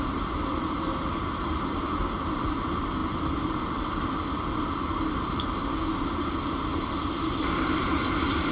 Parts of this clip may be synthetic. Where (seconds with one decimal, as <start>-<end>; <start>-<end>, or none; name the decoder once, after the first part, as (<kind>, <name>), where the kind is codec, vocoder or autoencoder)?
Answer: 0.0-8.5 (vocoder, BigVGAN v2)